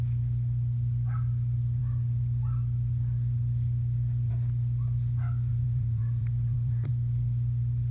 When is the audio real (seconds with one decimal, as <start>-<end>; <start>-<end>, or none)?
0.0-5.5; 6.9-7.9